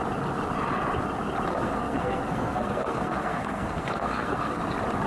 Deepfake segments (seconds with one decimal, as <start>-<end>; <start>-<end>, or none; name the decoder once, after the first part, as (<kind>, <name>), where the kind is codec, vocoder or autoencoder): 1.5-4.6 (codec, SNAC)